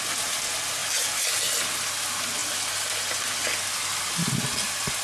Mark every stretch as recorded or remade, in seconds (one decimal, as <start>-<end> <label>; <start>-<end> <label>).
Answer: 0.0-5.0 recorded